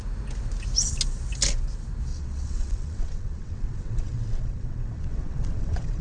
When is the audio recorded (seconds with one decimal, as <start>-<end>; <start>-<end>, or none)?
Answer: 0.0-2.1